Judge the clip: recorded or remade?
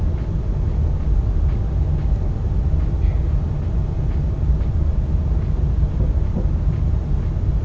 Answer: recorded